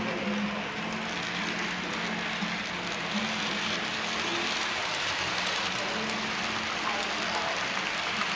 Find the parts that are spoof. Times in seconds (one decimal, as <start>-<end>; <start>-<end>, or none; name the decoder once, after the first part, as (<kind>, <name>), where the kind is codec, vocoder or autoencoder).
none